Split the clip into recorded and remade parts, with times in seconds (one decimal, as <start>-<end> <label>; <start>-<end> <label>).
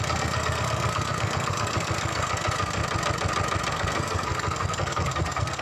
0.0-2.8 remade; 2.8-3.7 recorded; 3.7-5.6 remade